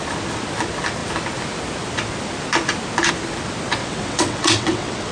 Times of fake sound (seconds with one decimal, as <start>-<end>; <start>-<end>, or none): 3.8-5.1